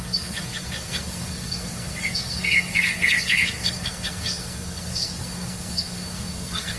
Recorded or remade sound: remade